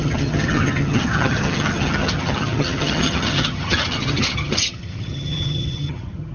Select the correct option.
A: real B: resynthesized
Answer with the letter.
B